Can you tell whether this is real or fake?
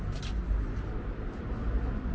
real